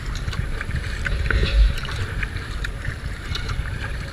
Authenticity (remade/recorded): remade